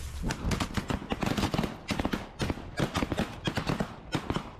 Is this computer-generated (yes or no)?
no